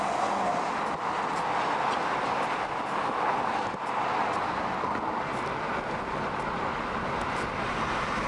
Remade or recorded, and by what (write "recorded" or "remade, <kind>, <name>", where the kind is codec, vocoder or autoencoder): recorded